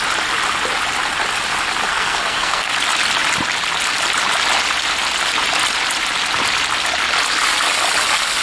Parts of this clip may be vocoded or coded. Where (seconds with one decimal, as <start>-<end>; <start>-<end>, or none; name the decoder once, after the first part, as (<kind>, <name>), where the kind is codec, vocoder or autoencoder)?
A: 1.9-2.7 (codec, SNAC)